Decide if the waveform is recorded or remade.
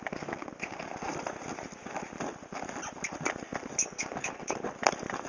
recorded